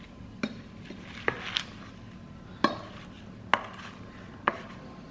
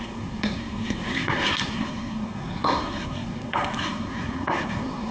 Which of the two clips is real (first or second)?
first